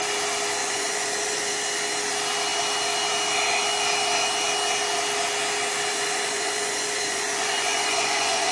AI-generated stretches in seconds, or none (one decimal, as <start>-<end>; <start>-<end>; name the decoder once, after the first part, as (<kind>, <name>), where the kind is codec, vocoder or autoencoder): 0.6-1.5 (vocoder, Vocos); 5.9-8.5